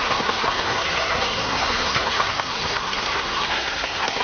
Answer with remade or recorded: remade